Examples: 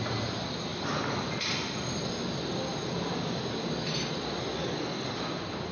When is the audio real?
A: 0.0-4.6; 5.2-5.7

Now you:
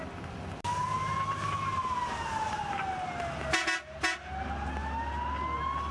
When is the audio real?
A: 0.0-5.9

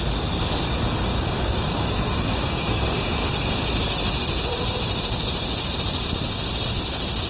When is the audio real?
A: 0.0-1.1; 3.1-7.3

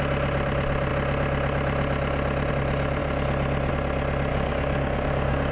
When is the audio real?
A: 0.0-4.3

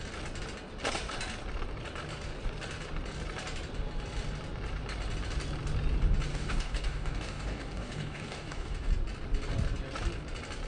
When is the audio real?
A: 0.0-6.3; 8.9-10.7

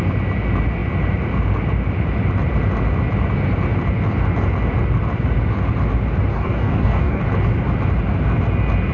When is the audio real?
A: 0.0-6.3; 7.2-8.9

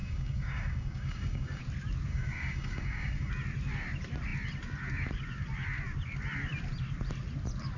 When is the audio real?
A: 1.6-2.1; 3.3-7.8